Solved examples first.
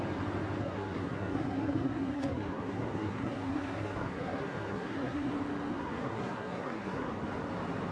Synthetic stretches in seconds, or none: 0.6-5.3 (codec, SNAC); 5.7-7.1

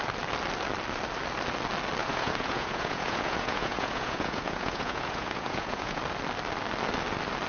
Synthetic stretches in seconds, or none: 2.0-6.0 (vocoder, Vocos)

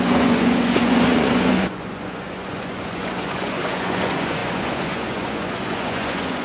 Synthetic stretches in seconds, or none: 0.0-6.4 (vocoder, Vocos)

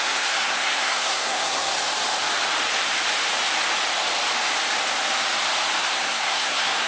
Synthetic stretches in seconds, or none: 0.0-1.7 (codec, SNAC); 5.8-6.9

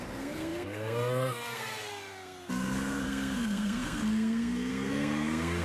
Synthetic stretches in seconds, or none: 0.0-5.6 (codec, SNAC)

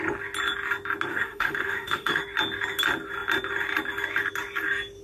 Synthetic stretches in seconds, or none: 1.1-2.2 (autoencoder, DAC-VAE)